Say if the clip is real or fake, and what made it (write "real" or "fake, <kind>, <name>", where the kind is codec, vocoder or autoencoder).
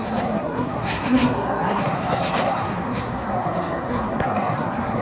fake, codec, SNAC